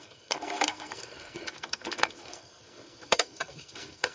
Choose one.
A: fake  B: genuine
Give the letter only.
A